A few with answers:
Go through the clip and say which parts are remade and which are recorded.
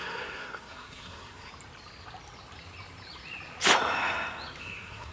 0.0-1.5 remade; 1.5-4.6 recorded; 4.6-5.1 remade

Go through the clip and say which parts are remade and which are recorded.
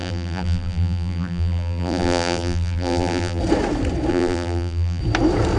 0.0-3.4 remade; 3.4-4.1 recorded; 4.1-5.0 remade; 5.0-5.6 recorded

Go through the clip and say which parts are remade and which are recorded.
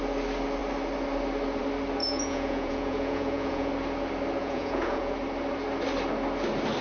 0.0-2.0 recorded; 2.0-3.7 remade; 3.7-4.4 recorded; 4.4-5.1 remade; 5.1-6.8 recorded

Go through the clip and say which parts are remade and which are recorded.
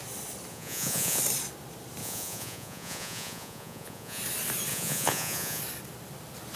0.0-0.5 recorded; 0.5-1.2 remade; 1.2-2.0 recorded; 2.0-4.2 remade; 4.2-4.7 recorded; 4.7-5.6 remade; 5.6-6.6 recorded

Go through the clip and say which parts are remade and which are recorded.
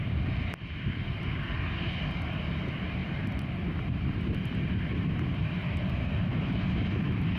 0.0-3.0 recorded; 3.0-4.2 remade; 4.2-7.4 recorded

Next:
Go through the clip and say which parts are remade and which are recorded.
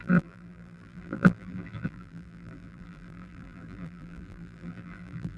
0.0-5.4 remade